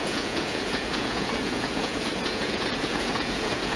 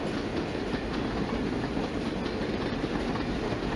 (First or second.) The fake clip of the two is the first